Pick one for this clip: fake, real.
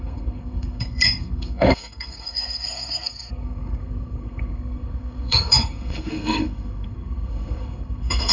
fake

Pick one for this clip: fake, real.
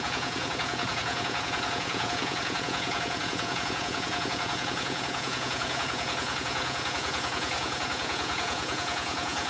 fake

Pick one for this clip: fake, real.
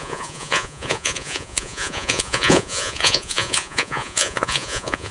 fake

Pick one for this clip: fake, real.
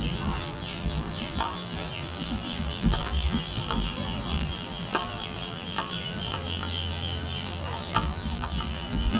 fake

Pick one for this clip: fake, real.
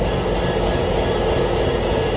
real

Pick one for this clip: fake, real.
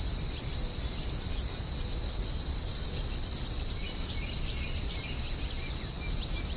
real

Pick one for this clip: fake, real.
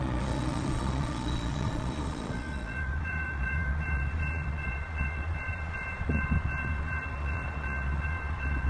fake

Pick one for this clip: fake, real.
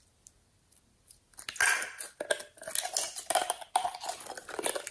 real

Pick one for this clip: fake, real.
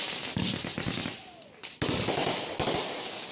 real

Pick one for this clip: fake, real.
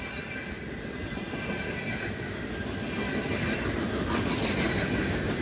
real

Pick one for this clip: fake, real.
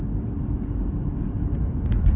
real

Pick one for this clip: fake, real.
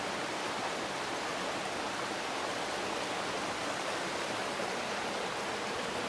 real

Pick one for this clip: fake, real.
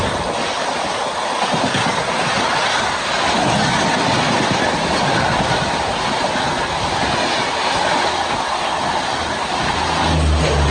real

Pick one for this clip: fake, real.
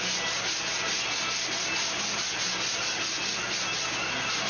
real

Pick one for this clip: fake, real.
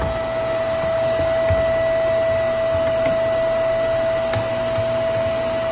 real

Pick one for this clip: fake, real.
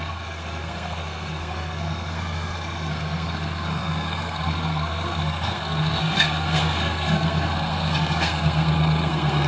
fake